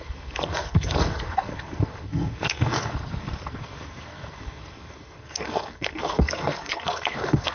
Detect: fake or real fake